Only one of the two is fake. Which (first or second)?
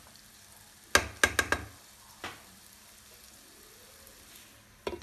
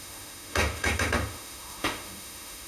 second